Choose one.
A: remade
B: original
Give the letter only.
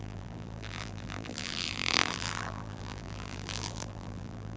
A